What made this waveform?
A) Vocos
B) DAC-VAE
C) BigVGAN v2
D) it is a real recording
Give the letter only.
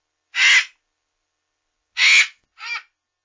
D